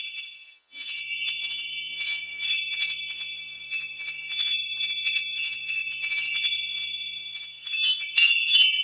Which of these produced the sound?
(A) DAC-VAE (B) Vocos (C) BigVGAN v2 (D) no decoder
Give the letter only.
B